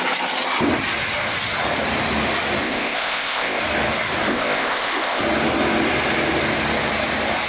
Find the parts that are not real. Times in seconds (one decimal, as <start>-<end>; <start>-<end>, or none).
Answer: 2.6-3.6; 4.3-5.2